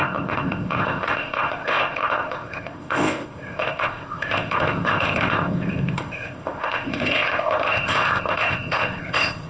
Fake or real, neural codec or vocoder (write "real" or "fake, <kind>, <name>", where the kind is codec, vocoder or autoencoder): fake, codec, ZipCodec